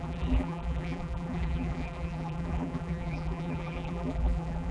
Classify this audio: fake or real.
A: fake